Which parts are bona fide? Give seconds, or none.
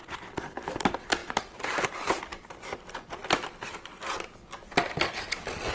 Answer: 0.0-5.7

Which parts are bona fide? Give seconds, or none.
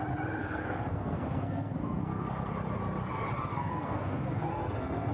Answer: 0.0-0.4; 2.5-3.5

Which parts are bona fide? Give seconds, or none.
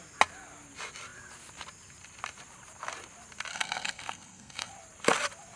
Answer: 0.0-3.5; 4.7-5.6